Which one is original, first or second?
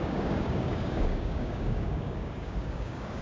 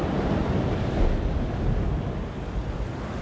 second